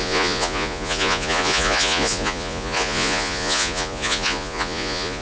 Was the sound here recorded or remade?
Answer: remade